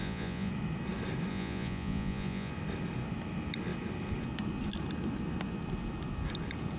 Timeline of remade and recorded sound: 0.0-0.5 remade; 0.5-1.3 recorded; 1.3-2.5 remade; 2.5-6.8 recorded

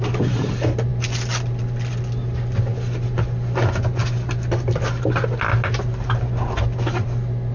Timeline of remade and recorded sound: 0.0-7.5 recorded